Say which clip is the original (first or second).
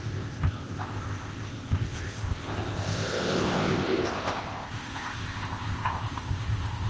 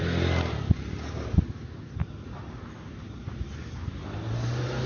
second